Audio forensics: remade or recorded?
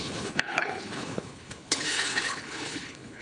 remade